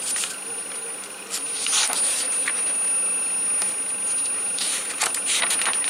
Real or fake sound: real